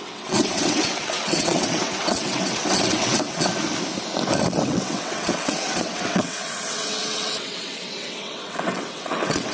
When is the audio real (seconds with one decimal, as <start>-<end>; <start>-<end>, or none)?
3.5-4.6